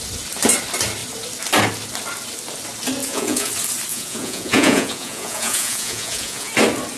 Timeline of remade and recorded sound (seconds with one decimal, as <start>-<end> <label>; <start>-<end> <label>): 0.0-3.0 recorded; 3.0-3.5 remade; 3.5-3.9 recorded; 3.9-6.5 remade; 6.5-7.0 recorded